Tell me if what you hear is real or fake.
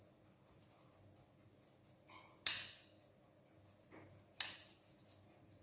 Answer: real